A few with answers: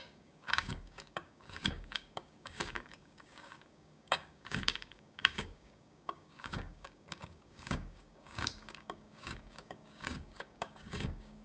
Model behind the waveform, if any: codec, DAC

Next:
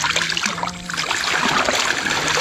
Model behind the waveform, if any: none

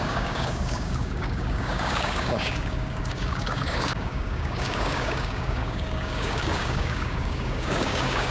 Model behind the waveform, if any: codec, DAC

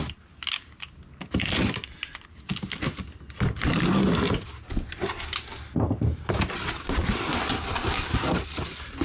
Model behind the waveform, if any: none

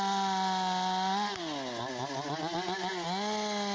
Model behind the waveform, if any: none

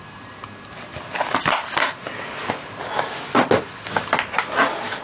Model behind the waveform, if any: none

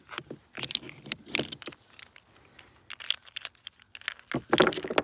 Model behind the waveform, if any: none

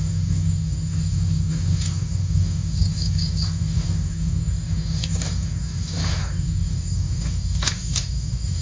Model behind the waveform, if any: codec, DAC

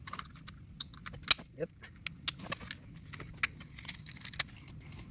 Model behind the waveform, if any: none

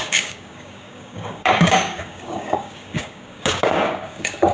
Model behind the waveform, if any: codec, DAC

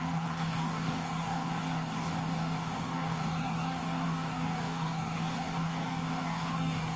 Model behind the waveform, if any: codec, DAC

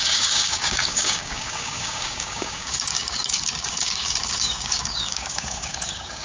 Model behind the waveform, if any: codec, DAC